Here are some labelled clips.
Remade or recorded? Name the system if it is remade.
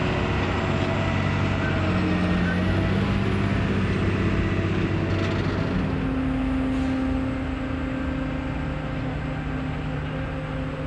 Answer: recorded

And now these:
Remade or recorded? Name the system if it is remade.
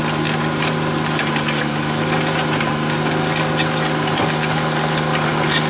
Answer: recorded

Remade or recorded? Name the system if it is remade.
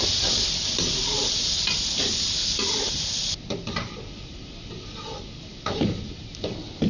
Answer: recorded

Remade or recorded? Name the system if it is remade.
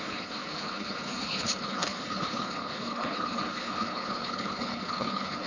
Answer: remade, codec, HILCodec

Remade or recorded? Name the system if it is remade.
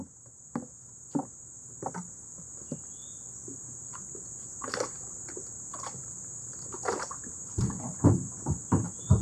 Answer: recorded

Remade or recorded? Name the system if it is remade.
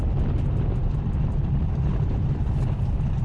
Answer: recorded